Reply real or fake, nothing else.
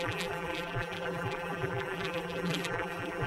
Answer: fake